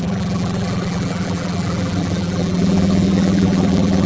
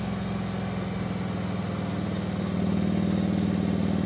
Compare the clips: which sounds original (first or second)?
second